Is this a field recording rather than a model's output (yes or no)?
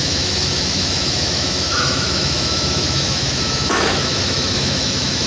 no